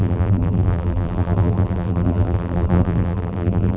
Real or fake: fake